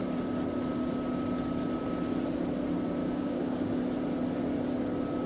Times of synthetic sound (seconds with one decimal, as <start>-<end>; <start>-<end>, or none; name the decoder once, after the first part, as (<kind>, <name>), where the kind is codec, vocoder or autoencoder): 3.0-3.8 (codec, DAC)